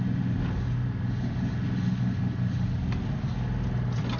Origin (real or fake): real